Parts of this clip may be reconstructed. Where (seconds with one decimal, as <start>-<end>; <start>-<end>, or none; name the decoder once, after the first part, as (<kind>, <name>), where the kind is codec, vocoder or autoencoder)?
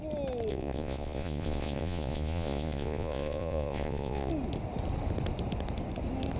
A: 0.5-4.3 (vocoder, Vocos)